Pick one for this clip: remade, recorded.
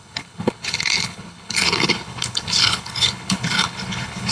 remade